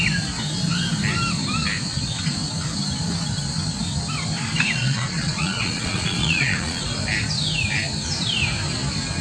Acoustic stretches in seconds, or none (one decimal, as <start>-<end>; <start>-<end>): 0.0-4.8; 6.8-9.2